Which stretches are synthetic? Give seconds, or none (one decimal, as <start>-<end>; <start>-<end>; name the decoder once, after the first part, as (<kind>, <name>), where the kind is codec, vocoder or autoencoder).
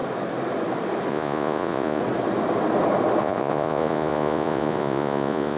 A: 1.1-2.0 (vocoder, Vocos); 3.2-5.6